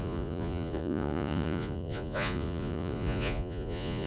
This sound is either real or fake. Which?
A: fake